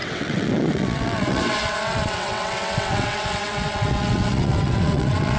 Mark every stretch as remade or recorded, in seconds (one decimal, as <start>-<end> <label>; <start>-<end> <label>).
0.0-5.4 remade